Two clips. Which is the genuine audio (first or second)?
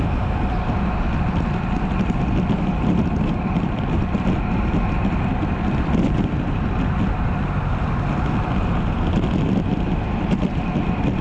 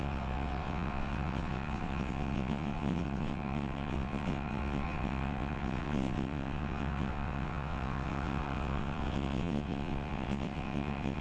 first